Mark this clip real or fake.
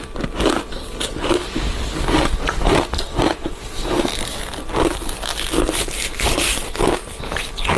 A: real